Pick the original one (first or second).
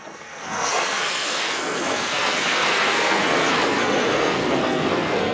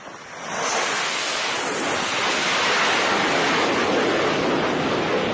second